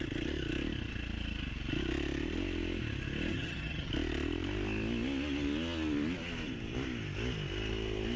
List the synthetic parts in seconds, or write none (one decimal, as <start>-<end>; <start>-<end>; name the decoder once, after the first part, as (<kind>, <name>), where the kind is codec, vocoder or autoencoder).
3.3-3.9 (vocoder, HiFi-GAN)